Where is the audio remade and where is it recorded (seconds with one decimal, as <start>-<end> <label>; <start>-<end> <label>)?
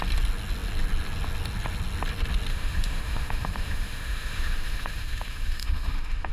0.0-2.5 recorded; 2.5-6.3 remade